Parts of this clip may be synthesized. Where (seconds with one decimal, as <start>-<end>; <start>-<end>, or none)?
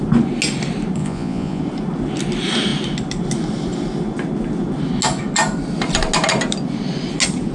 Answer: 1.0-1.6